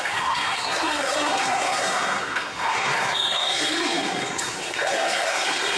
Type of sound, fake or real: fake